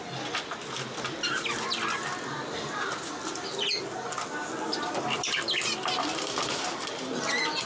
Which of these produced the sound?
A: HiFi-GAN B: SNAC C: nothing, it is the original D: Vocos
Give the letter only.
C